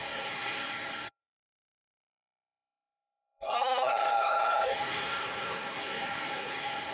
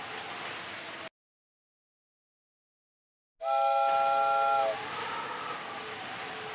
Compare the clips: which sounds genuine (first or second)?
second